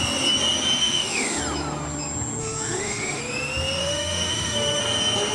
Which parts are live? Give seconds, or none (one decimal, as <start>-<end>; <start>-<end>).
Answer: 0.0-0.8; 1.4-2.4; 3.2-3.8; 4.8-5.3